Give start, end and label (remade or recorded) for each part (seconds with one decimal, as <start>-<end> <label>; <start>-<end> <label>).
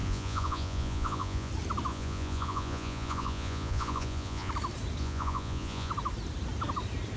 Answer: 0.0-1.5 remade; 1.5-1.9 recorded; 1.9-4.5 remade; 4.5-5.0 recorded; 5.0-5.9 remade; 5.9-7.2 recorded